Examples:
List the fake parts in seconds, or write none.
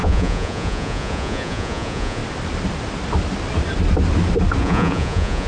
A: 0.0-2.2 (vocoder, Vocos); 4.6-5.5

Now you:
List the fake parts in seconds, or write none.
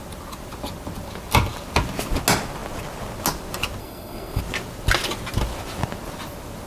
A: 3.8-4.4 (codec, SNAC)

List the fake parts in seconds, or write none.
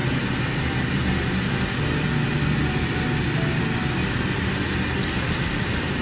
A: none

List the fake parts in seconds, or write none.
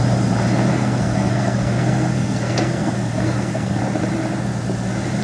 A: 0.7-3.8 (codec, SNAC)